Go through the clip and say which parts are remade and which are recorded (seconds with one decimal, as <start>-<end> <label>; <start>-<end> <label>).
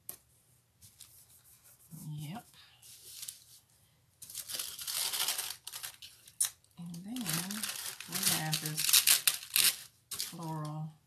0.0-2.0 recorded; 2.0-2.8 remade; 2.8-11.1 recorded